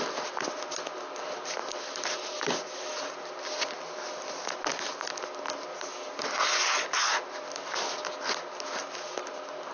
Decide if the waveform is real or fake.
real